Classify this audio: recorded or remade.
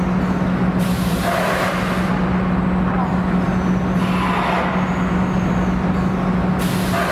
recorded